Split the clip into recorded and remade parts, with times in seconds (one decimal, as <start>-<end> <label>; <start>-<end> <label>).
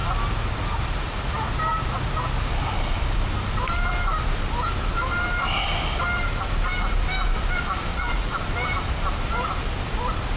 0.0-7.9 recorded; 7.9-8.4 remade; 8.4-10.4 recorded